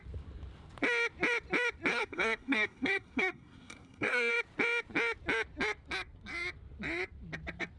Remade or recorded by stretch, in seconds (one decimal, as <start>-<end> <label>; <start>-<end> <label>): 0.0-1.9 recorded; 1.9-4.3 remade; 4.3-7.8 recorded